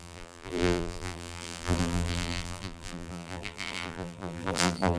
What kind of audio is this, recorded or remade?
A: remade